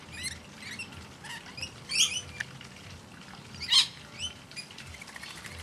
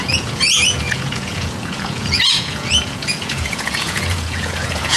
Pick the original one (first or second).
first